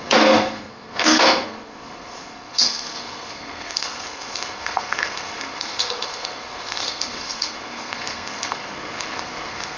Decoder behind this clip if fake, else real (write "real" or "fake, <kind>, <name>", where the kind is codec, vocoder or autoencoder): fake, codec, SNAC